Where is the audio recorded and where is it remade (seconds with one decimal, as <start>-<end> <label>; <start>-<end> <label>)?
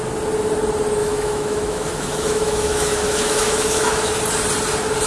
0.0-1.0 recorded; 1.0-4.1 remade; 4.1-5.1 recorded